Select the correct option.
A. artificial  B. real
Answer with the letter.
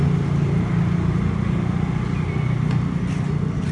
B